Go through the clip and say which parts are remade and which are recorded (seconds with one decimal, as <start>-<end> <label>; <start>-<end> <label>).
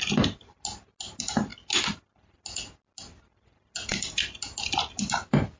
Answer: 0.0-5.6 recorded